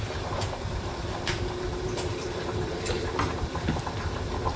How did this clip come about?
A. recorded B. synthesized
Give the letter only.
B